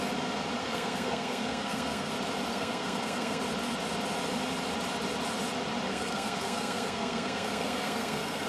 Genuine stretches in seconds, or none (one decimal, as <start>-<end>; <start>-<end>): 0.0-0.6; 2.1-2.5; 3.4-5.9